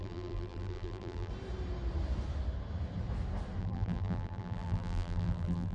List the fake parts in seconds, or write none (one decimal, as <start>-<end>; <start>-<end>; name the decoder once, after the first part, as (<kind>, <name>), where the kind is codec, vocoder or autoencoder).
0.0-1.3 (vocoder, BigVGAN v2); 3.6-5.7